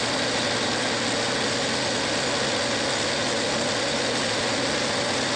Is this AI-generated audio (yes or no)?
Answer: no